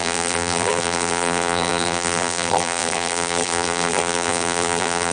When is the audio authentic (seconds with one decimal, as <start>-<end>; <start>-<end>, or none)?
none